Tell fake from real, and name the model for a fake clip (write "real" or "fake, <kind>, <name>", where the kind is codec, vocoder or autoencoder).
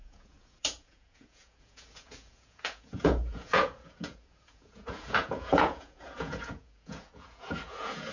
fake, vocoder, Vocos